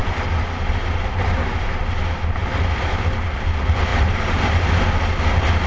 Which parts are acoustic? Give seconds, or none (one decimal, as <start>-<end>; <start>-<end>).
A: 1.8-3.9; 4.7-5.7